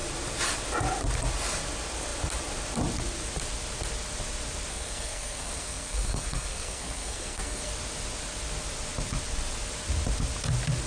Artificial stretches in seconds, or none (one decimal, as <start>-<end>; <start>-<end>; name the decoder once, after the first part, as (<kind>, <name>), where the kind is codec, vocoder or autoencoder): 4.7-7.7 (codec, SNAC)